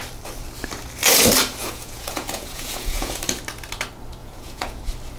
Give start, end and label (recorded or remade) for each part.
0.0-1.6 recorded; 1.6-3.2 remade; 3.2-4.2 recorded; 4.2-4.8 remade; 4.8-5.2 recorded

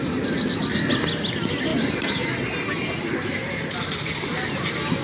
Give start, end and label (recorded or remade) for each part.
0.0-5.0 recorded

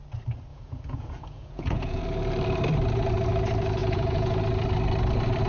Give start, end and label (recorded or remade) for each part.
0.0-0.5 recorded; 0.5-2.0 remade; 2.0-3.8 recorded; 3.8-4.4 remade; 4.4-5.5 recorded

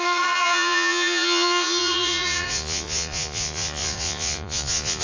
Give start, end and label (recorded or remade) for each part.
0.0-5.0 remade